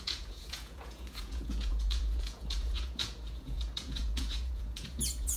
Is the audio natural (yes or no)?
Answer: no